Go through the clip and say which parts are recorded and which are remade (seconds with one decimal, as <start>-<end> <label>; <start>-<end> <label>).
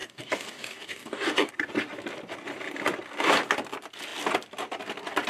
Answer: 0.0-1.5 remade; 1.5-5.3 recorded